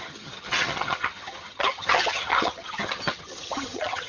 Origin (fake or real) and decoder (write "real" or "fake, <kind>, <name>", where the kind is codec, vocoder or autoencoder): fake, vocoder, HiFi-GAN